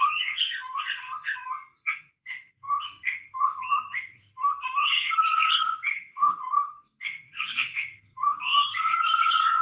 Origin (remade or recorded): remade